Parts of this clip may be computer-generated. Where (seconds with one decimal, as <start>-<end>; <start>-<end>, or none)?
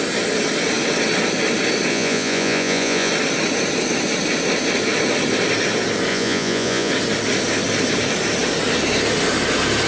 1.9-3.1; 6.1-6.9